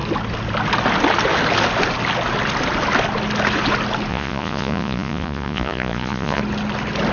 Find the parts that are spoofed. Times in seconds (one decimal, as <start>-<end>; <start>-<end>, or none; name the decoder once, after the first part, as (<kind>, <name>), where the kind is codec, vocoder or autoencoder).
4.1-6.4 (vocoder, Vocos)